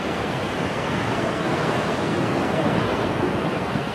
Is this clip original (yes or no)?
no